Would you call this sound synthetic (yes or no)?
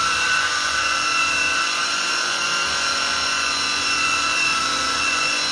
yes